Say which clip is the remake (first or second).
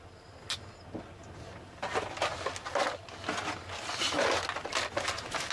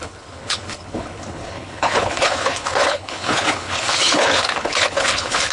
second